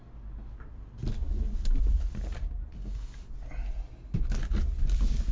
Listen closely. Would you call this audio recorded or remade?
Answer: recorded